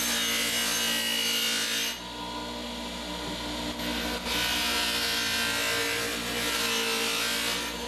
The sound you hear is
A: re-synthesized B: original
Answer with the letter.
B